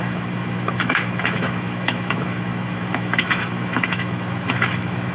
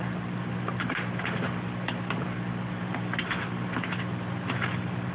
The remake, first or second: first